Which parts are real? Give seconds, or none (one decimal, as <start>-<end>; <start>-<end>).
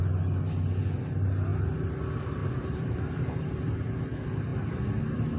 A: 0.0-2.4; 3.6-5.4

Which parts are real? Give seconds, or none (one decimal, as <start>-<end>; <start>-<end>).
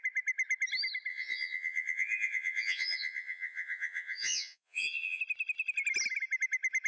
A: 0.0-1.1; 5.2-6.9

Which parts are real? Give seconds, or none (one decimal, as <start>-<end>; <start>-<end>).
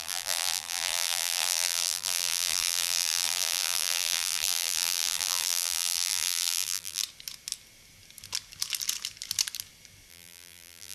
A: 7.0-10.1